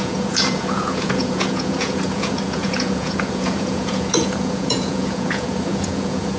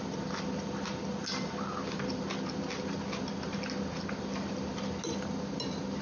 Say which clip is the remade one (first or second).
first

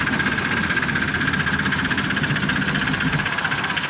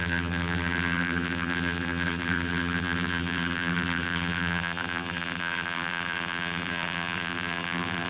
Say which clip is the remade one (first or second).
second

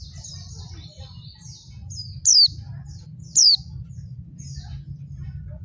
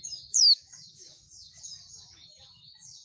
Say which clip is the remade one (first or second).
second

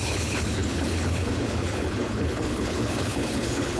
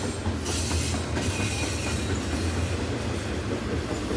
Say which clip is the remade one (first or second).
first